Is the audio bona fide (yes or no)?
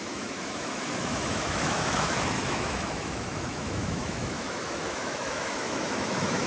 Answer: no